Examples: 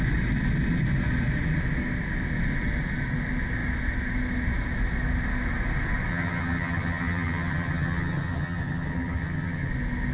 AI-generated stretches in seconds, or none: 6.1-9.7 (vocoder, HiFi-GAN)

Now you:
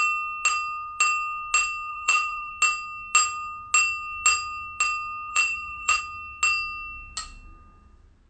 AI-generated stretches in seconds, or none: 1.9-2.5 (vocoder, BigVGAN v2); 5.3-6.0

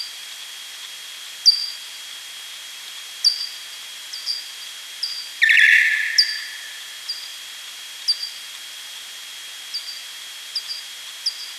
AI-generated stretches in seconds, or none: none

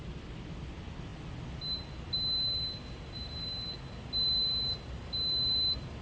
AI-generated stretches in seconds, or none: none

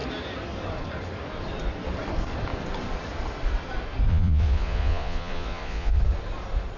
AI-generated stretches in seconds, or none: 4.1-6.0 (vocoder, Vocos)

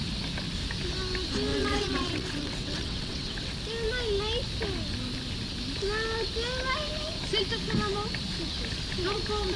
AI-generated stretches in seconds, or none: 1.5-3.5 (vocoder, WaveNeXt)

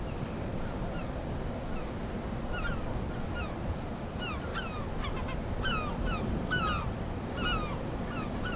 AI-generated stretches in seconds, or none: none